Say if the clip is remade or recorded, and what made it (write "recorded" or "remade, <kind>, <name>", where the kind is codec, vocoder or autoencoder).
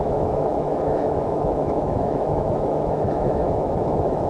remade, autoencoder, DAC-VAE